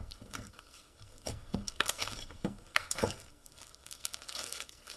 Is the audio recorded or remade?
remade